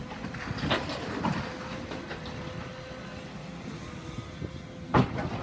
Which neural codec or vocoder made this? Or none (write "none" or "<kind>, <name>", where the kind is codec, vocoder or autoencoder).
none